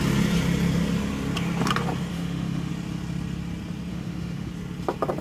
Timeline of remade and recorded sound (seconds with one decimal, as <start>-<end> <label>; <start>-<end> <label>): 0.0-2.1 recorded; 2.1-2.7 remade; 2.7-3.9 recorded; 3.9-4.5 remade; 4.5-5.2 recorded